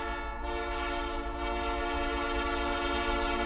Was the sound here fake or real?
real